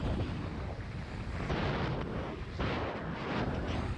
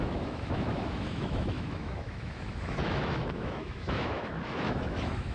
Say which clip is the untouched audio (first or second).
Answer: first